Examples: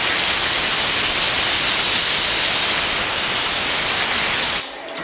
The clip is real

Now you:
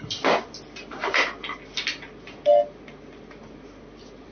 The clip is real